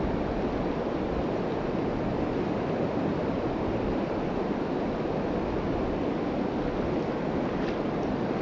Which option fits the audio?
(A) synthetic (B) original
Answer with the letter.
B